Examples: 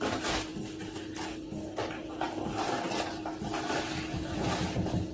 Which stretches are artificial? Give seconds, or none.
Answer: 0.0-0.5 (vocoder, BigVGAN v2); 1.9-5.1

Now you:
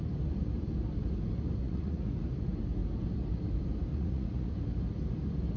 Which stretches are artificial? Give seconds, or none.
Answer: 1.6-2.1 (vocoder, Vocos); 3.9-4.5

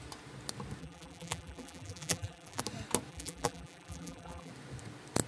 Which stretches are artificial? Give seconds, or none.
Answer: 0.8-2.6 (vocoder, BigVGAN v2); 3.1-4.5

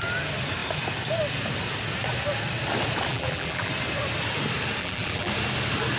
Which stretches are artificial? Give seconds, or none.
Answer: 3.1-3.7 (vocoder, BigVGAN v2); 4.8-5.3

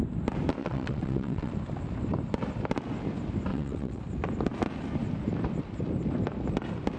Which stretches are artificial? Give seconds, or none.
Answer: 0.6-1.5 (vocoder, WaveNeXt); 3.5-4.0

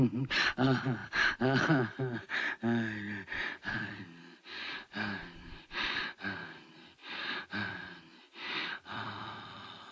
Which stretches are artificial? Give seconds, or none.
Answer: 4.8-6.0 (vocoder, BigVGAN v2)

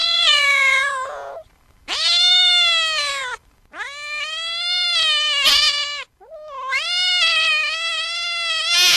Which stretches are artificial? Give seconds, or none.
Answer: 0.0-1.3 (vocoder, Vocos)

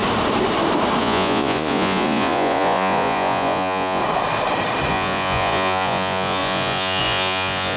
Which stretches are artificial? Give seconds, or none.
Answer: 1.0-4.0 (vocoder, Vocos); 4.9-7.8